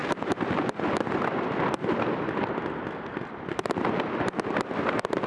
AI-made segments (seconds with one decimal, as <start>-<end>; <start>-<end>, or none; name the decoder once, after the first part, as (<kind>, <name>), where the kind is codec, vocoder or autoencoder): none